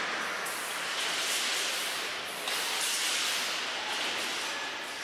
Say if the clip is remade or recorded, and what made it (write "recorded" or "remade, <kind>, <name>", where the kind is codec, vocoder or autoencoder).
recorded